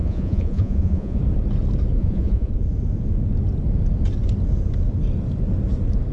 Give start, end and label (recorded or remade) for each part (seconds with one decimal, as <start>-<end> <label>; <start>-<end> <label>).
0.0-1.2 remade; 1.2-2.0 recorded; 2.0-2.5 remade; 2.5-6.1 recorded